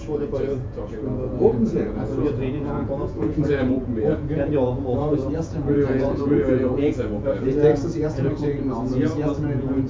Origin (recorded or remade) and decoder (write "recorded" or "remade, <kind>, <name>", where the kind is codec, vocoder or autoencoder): remade, vocoder, Vocos